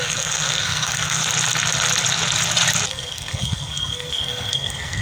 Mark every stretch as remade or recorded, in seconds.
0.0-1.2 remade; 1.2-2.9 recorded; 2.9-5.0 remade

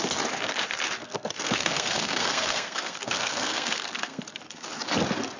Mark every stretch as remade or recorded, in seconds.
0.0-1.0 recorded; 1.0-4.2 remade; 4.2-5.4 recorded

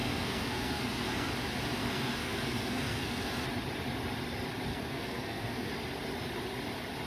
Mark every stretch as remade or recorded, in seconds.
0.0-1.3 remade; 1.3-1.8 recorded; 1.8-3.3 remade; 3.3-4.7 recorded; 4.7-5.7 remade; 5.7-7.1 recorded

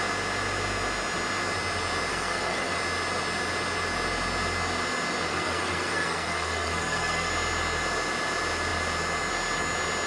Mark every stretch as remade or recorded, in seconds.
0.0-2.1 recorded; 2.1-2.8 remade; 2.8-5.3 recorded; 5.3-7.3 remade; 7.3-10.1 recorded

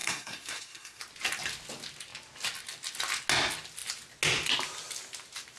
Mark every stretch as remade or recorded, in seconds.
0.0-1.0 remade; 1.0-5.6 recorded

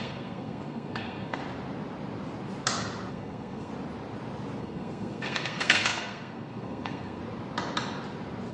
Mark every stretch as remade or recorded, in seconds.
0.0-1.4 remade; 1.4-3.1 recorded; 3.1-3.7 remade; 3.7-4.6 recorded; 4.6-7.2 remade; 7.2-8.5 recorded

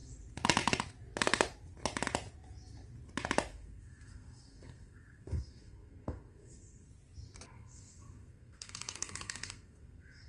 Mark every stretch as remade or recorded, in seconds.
0.0-3.5 recorded; 3.5-6.9 remade; 6.9-7.5 recorded; 7.5-10.3 remade